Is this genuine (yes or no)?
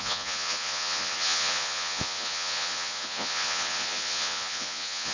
no